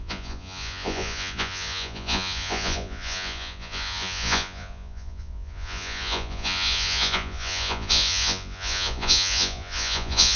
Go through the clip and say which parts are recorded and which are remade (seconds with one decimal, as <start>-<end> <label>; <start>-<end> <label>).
0.0-10.4 remade